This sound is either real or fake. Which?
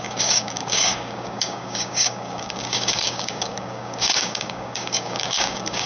fake